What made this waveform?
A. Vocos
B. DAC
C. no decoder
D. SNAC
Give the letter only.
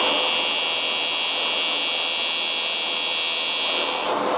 C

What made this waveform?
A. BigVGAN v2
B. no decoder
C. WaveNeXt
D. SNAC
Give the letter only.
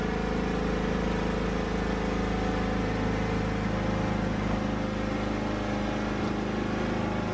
B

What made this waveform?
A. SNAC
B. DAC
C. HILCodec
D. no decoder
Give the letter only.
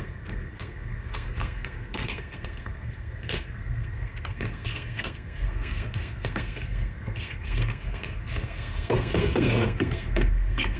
A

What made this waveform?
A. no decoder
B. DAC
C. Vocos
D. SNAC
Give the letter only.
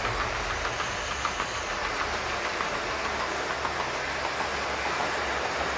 A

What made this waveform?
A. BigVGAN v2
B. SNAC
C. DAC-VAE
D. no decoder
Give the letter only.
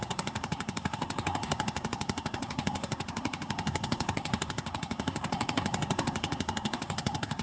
B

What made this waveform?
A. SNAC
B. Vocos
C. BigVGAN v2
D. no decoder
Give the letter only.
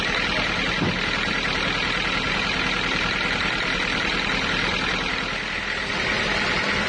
D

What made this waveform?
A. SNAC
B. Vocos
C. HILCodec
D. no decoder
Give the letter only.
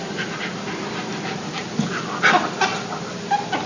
D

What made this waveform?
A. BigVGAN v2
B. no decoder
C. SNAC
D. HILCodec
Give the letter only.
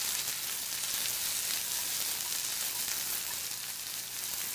B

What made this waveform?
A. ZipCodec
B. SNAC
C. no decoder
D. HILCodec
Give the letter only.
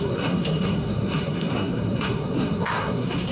B